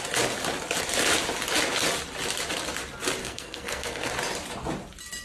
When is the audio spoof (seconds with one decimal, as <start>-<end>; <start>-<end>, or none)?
3.2-4.1